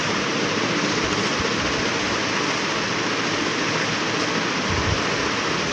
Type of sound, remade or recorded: recorded